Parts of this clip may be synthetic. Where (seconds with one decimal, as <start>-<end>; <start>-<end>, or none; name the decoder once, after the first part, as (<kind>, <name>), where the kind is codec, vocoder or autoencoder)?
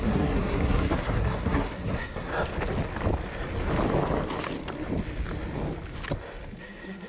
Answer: 0.0-2.3 (codec, SNAC); 6.6-7.1